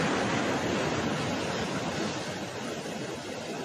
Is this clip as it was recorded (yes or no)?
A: yes